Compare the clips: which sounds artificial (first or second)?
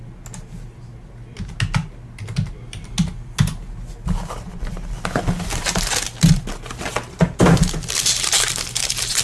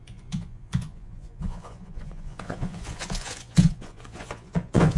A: second